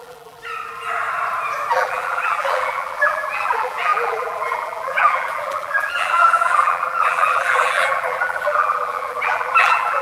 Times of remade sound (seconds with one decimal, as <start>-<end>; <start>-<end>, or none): 0.0-0.4; 1.7-10.0

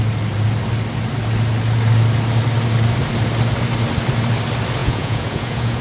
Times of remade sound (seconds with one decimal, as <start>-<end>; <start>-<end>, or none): 4.8-5.8

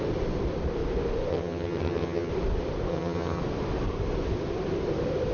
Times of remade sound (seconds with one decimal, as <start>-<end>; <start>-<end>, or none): 1.3-2.3; 2.9-3.4

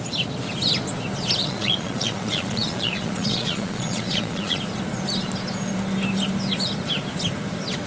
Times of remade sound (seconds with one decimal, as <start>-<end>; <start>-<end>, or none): 1.4-4.6

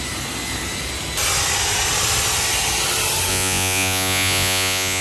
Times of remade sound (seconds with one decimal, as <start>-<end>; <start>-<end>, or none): 3.3-5.0

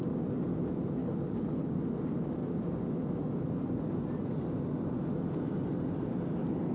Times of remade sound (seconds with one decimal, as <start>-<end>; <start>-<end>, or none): 1.0-1.7